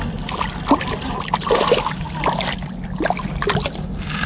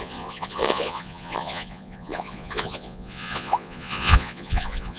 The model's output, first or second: second